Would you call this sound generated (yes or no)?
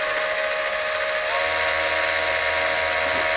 no